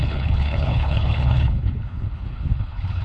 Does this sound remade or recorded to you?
remade